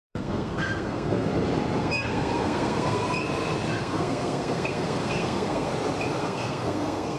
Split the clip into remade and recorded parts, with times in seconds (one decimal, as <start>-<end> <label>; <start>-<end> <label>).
0.0-1.3 remade; 1.3-1.8 recorded; 1.8-3.0 remade; 3.0-3.8 recorded; 3.8-5.7 remade; 5.7-6.2 recorded; 6.2-7.2 remade